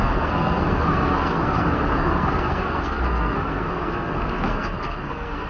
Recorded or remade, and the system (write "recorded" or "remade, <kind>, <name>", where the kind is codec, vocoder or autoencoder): remade, codec, SNAC